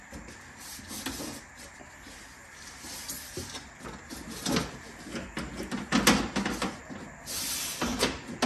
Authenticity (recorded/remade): recorded